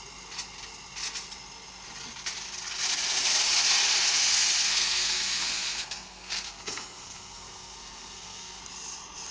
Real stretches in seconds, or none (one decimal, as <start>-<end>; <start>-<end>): 0.0-4.7; 8.6-9.3